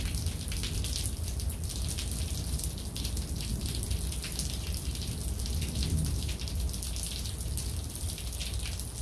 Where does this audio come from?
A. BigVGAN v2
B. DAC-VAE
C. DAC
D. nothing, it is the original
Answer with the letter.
D